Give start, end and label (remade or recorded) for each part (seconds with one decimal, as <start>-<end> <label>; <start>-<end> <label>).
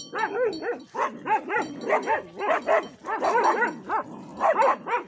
0.0-4.3 recorded; 4.3-5.1 remade